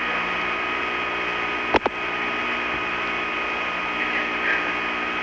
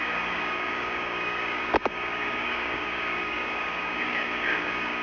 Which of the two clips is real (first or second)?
first